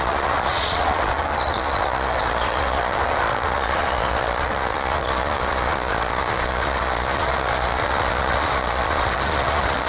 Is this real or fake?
fake